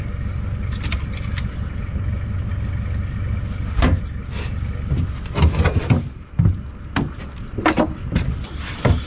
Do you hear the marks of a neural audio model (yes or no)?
no